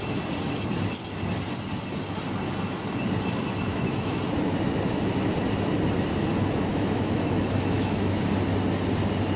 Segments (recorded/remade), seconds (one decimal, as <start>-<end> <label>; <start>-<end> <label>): 0.0-3.7 recorded; 3.7-4.2 remade; 4.2-6.7 recorded; 6.7-8.2 remade; 8.2-9.4 recorded